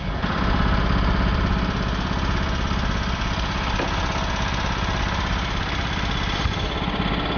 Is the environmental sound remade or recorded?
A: remade